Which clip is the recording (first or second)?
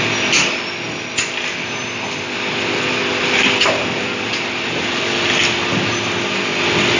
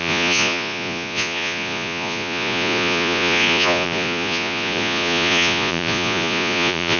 first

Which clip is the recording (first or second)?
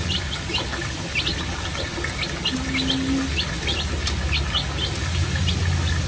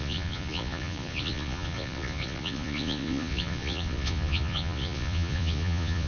first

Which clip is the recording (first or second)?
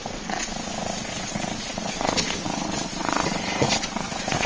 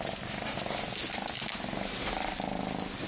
second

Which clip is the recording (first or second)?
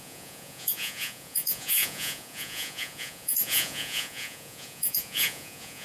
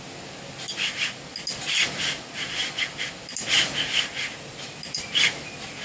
second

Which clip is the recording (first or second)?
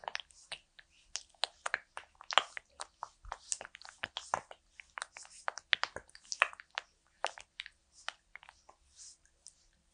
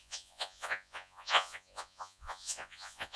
first